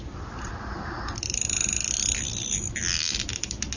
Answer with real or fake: real